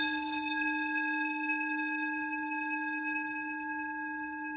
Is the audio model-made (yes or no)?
yes